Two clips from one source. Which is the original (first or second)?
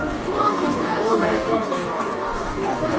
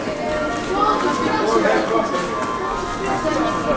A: second